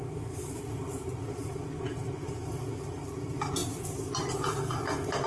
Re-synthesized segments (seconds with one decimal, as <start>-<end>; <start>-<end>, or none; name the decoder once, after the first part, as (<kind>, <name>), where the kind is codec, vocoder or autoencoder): none